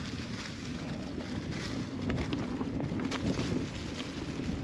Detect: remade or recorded recorded